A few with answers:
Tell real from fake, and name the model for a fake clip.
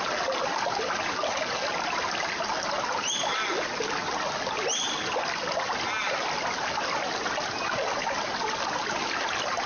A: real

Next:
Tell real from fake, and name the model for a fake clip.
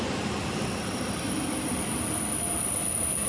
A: real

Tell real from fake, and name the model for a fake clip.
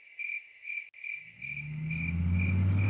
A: real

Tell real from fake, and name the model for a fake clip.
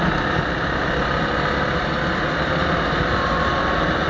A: real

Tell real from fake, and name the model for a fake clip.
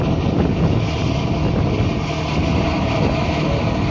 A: real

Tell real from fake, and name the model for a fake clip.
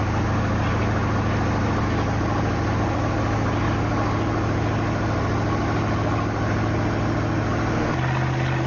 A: real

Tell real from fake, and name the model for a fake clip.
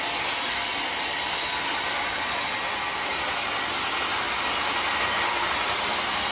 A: real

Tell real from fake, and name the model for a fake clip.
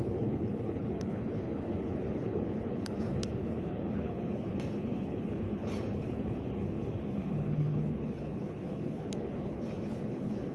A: fake, codec, HILCodec